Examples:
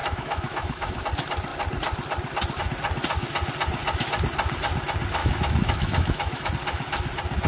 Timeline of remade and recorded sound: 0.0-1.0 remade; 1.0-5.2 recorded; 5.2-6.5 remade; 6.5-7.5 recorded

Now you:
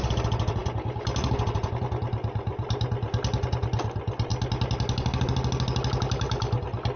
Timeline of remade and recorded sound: 0.0-7.0 recorded

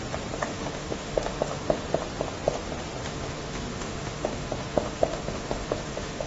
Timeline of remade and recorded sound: 0.0-0.5 recorded; 0.5-1.8 remade; 1.8-3.0 recorded; 3.0-6.3 remade